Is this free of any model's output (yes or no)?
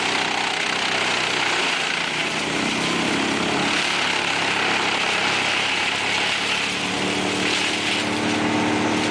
yes